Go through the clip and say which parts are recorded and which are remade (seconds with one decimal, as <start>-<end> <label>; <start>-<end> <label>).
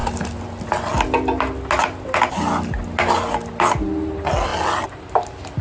0.0-5.6 recorded